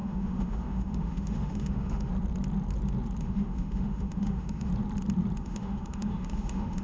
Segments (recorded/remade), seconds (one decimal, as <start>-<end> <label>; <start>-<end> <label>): 0.0-2.1 remade; 2.1-3.2 recorded; 3.2-4.7 remade; 4.7-5.4 recorded; 5.4-6.8 remade